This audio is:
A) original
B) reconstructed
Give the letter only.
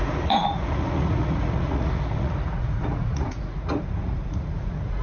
B